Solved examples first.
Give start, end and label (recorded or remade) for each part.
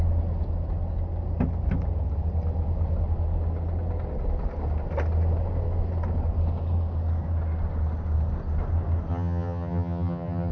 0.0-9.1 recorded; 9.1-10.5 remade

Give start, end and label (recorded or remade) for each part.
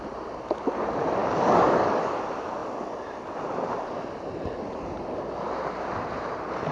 0.0-1.2 recorded; 1.2-2.2 remade; 2.2-6.7 recorded